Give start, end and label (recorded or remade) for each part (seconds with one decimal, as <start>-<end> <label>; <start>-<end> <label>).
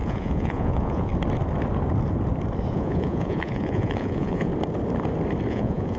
0.0-1.1 remade; 1.1-2.7 recorded; 2.7-4.5 remade; 4.5-5.5 recorded; 5.5-6.0 remade